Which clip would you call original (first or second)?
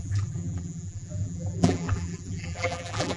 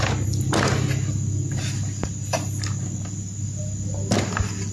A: second